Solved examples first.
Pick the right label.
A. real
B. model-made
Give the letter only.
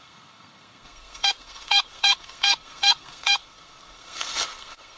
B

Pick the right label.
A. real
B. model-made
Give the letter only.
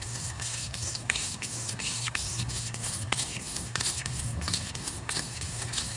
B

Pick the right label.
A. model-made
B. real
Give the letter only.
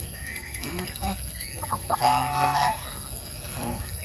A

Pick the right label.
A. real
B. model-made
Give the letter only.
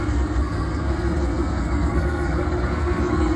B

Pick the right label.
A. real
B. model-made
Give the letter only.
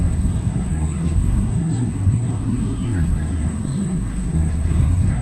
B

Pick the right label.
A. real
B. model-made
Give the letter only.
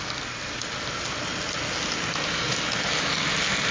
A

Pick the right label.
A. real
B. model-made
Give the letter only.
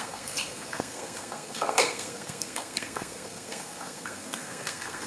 B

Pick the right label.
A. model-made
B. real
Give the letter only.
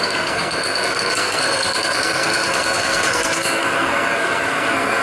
A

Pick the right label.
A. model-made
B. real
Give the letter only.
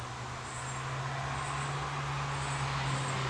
B